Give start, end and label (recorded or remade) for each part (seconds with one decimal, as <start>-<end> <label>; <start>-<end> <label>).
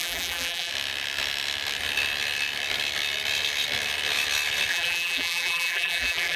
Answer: 0.0-0.7 remade; 0.7-4.7 recorded; 4.7-6.4 remade